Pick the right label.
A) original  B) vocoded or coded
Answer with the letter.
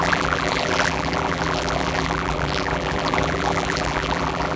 B